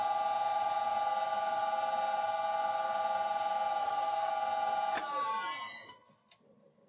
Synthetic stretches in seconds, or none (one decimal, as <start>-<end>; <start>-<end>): 3.8-4.3